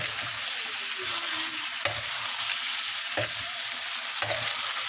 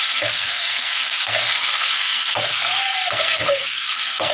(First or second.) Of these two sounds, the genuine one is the first